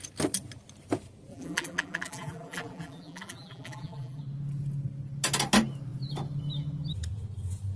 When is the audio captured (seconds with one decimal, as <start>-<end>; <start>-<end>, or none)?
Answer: 0.0-1.3; 4.2-7.8